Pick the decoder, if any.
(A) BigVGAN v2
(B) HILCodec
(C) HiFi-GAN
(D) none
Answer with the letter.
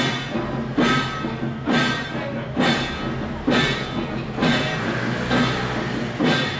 D